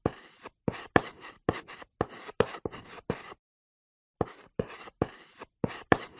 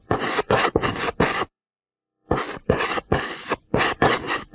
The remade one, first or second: second